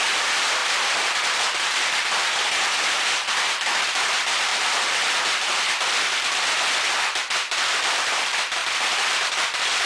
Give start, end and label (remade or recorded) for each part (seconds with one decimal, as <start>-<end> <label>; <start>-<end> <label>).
0.0-9.9 remade